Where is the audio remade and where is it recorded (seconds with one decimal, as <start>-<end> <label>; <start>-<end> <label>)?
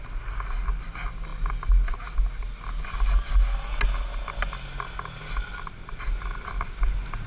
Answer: 0.0-7.3 recorded